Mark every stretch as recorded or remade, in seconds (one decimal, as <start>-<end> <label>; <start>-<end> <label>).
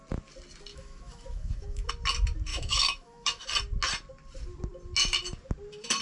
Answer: 0.0-0.7 recorded; 0.7-1.9 remade; 1.9-2.5 recorded; 2.5-3.4 remade; 3.4-6.0 recorded